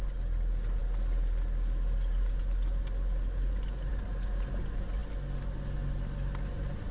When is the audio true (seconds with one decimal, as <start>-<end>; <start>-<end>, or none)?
0.0-6.9